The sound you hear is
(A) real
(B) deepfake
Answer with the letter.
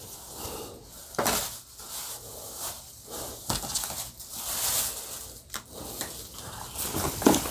A